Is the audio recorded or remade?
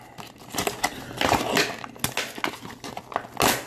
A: recorded